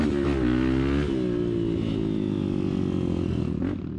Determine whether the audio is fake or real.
real